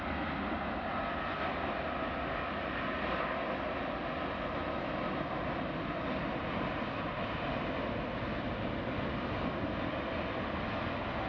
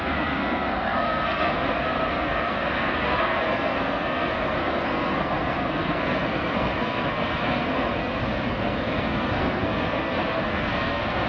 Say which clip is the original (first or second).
first